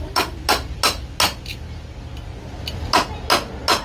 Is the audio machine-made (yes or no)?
no